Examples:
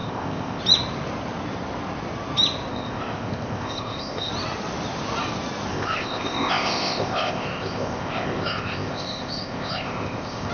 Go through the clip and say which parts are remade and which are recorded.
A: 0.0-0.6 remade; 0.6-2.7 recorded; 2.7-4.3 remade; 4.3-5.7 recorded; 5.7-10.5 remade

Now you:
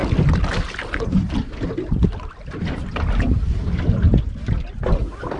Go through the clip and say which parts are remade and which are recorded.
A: 0.0-5.4 recorded